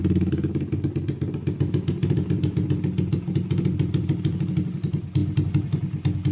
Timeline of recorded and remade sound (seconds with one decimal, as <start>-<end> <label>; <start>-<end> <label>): 0.0-6.3 recorded